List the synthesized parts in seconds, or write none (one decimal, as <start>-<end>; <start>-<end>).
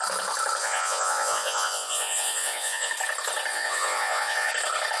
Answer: 0.6-2.9; 3.5-4.5